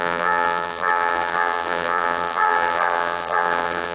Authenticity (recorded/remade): remade